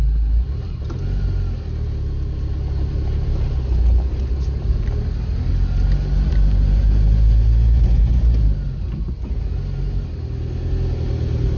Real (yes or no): yes